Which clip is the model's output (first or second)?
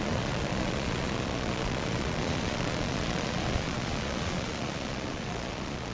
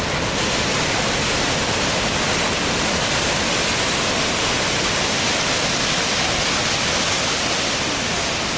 first